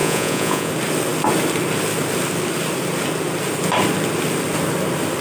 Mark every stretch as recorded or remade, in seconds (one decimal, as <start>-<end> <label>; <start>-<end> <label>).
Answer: 0.0-0.7 remade; 0.7-5.2 recorded